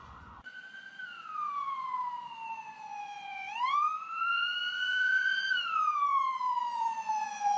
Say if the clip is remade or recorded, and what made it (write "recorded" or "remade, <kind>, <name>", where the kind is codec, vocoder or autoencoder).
remade, vocoder, Vocos